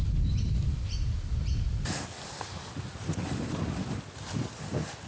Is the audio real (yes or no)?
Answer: yes